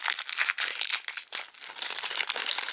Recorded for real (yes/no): yes